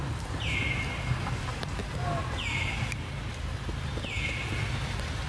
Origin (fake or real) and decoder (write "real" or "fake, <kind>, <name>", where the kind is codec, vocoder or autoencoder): real